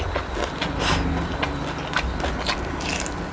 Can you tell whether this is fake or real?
real